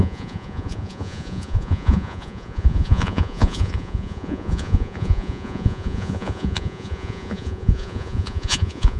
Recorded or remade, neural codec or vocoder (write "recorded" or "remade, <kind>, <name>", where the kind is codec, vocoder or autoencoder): remade, vocoder, Vocos